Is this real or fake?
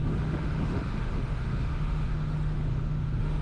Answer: fake